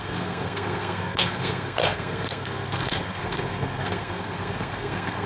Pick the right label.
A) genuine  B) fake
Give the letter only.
B